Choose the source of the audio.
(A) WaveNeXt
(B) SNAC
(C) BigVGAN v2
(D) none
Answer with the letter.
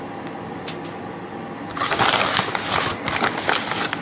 D